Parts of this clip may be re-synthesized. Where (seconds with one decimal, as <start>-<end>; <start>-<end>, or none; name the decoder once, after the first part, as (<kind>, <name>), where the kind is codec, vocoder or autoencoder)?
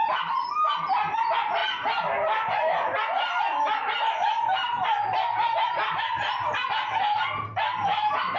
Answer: none